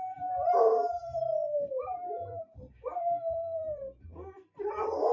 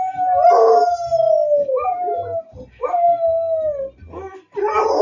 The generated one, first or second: first